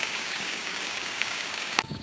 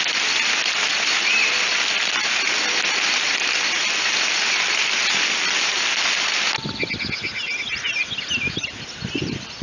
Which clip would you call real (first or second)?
second